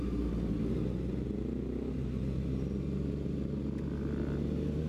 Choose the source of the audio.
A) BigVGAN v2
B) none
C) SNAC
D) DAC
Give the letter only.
B